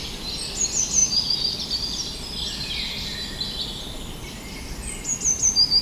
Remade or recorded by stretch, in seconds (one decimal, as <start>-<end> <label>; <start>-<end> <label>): 0.0-5.8 recorded